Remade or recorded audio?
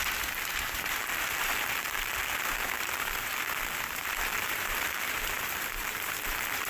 remade